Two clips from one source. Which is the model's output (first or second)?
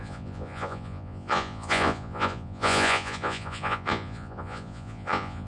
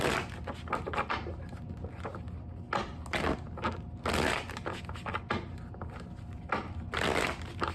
first